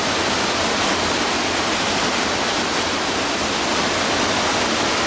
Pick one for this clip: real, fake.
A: real